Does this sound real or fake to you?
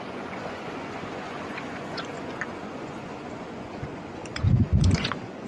fake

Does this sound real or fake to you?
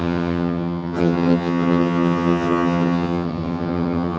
fake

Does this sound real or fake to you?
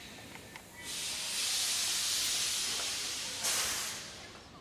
real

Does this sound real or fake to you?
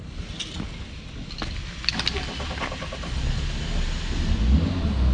real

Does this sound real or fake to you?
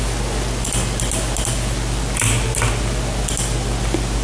real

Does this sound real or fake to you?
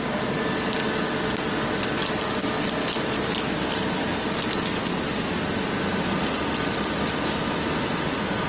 real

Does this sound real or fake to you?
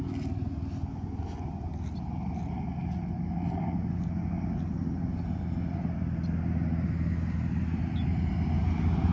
real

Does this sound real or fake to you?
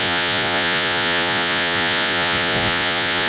fake